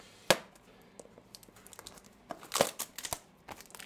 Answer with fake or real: real